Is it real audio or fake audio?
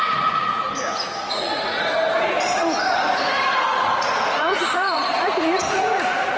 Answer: fake